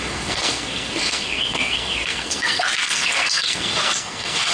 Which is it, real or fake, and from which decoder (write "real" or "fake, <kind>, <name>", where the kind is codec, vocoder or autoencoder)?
fake, codec, SNAC